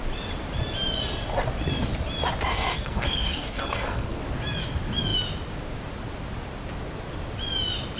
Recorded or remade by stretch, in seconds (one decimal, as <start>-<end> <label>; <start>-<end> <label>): 0.0-2.5 recorded; 2.5-4.2 remade; 4.2-8.0 recorded